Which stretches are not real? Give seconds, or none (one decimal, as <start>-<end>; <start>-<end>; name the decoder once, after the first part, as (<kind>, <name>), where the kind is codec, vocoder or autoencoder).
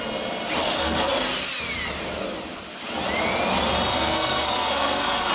0.6-1.1 (codec, SNAC); 3.9-5.3